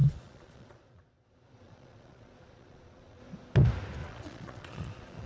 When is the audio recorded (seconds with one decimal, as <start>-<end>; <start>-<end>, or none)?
3.2-4.0